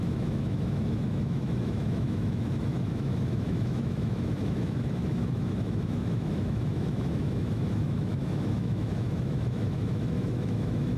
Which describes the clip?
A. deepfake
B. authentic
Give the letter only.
A